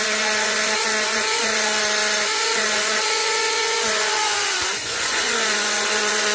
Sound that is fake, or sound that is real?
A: fake